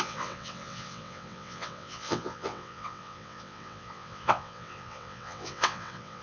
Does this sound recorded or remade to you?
remade